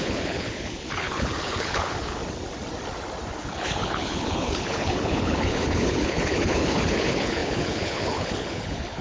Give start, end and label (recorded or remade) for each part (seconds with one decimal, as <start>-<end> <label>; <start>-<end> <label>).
0.0-2.2 remade; 2.2-3.4 recorded; 3.4-9.0 remade